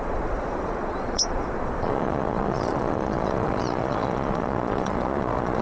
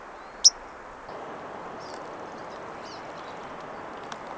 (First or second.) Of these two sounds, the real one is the second